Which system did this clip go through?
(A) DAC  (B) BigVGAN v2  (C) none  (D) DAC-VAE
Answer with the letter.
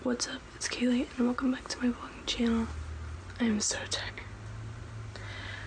C